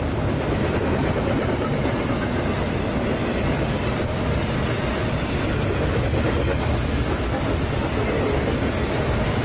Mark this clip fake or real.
real